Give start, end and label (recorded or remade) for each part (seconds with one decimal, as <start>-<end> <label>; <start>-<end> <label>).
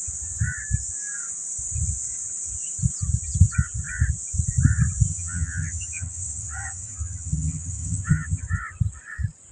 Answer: 0.0-5.1 recorded; 5.1-8.4 remade; 8.4-9.5 recorded